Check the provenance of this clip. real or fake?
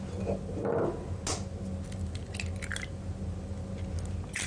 real